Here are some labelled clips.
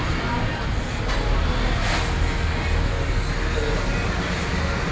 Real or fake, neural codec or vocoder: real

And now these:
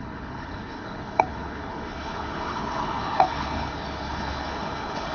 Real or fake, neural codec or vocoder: fake, codec, HILCodec